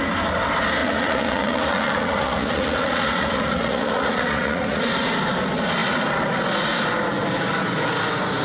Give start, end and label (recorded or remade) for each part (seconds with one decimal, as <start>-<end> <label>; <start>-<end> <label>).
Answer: 0.0-0.8 recorded; 0.8-4.9 remade; 4.9-8.4 recorded